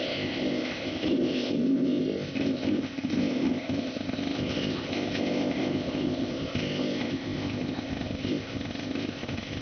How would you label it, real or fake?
fake